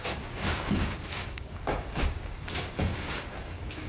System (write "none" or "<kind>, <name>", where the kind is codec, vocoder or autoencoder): codec, DAC